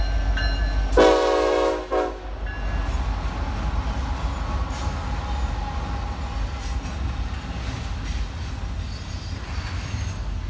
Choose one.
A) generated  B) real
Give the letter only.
B